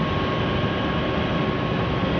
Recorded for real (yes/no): yes